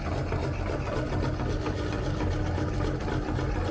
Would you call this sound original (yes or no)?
yes